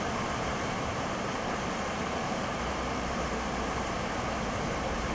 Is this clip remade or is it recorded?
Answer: remade